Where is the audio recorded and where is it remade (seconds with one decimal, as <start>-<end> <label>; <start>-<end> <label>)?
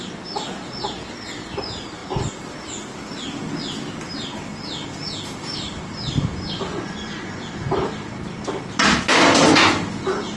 0.0-6.7 recorded; 6.7-7.4 remade; 7.4-10.4 recorded